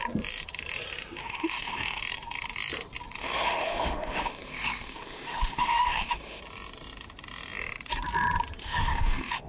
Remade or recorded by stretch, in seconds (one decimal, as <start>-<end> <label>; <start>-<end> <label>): 0.0-1.2 recorded; 1.2-2.0 remade; 2.0-3.2 recorded; 3.2-6.4 remade; 6.4-8.6 recorded; 8.6-9.5 remade

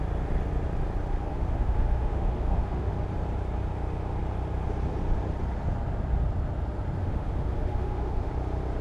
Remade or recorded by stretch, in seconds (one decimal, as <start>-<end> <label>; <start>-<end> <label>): 0.0-1.3 recorded; 1.3-2.9 remade; 2.9-7.0 recorded; 7.0-8.3 remade; 8.3-8.8 recorded